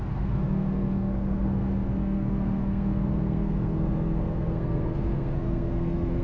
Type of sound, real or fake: fake